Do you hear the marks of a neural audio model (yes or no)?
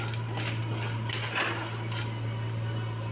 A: no